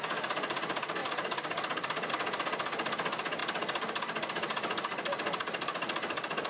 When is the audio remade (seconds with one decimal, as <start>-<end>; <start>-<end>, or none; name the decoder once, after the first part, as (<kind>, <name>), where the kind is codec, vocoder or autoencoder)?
none